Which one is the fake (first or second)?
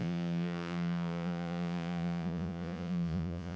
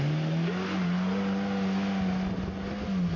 first